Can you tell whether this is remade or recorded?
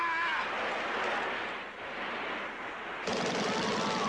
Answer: recorded